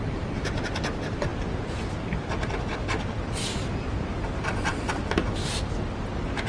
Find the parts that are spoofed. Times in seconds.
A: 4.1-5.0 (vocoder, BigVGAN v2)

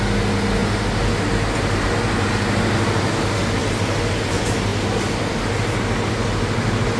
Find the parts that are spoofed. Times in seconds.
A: none

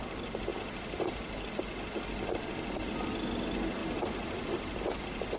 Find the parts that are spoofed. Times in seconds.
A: 3.8-5.0 (vocoder, BigVGAN v2)